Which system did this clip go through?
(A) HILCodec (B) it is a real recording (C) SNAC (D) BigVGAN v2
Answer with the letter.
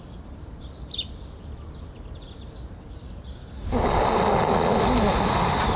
B